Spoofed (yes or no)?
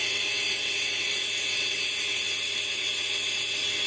yes